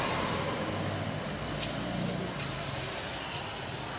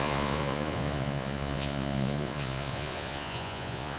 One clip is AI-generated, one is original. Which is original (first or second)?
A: first